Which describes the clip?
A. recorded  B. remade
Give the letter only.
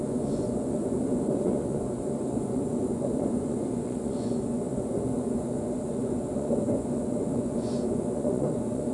B